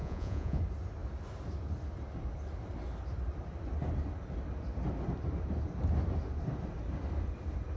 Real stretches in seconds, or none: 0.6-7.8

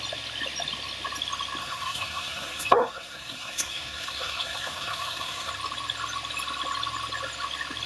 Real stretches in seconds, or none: 0.0-1.6; 5.5-7.9

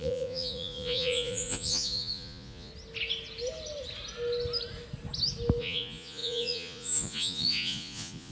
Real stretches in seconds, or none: 2.7-5.6

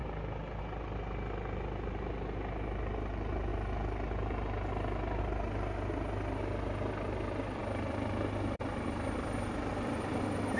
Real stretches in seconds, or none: 0.0-10.6

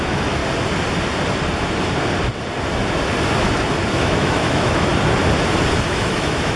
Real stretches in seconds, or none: 0.4-3.9; 4.9-5.9